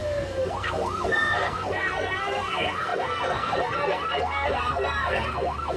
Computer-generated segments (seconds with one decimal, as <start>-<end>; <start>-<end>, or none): 0.0-5.8